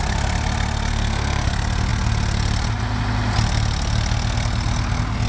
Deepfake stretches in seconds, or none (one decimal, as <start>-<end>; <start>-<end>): 0.9-1.5